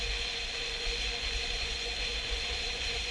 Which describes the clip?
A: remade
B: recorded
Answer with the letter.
A